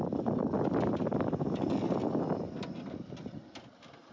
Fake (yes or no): no